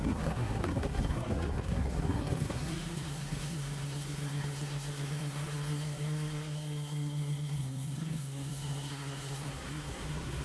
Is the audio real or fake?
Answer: fake